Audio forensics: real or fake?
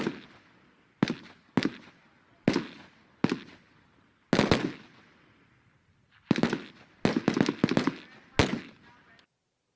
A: real